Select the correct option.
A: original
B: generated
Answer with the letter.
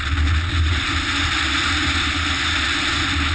A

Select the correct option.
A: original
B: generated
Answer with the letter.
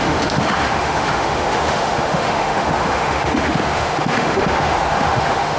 B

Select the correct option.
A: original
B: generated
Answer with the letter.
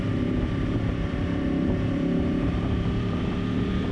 B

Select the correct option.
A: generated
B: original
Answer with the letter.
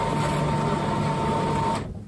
B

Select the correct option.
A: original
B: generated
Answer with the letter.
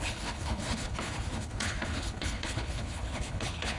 B